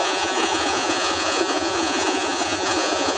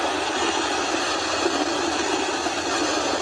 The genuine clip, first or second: second